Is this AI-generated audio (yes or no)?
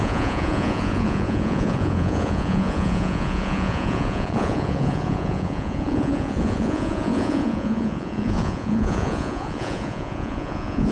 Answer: yes